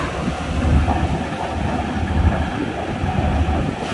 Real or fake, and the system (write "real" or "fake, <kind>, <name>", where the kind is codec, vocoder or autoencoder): real